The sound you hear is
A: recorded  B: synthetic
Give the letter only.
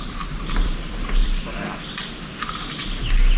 B